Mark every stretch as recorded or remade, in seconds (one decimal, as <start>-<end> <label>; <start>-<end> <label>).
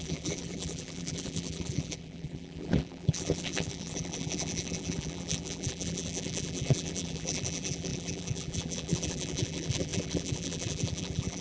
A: 0.0-11.4 remade